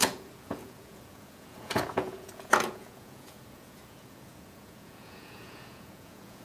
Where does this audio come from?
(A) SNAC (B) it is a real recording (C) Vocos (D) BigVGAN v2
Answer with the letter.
C